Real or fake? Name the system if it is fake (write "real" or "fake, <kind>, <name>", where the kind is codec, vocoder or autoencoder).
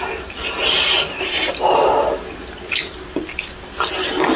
real